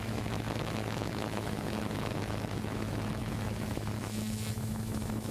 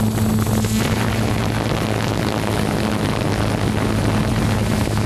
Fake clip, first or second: first